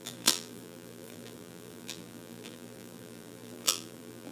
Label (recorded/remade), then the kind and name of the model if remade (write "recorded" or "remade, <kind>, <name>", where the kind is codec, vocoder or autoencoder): remade, vocoder, BigVGAN v2